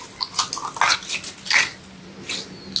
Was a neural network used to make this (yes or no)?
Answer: no